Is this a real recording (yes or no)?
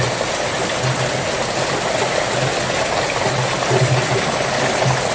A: yes